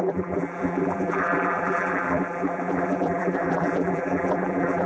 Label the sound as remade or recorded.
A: remade